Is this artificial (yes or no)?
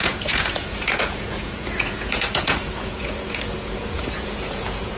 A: yes